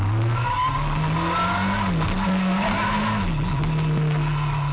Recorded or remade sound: recorded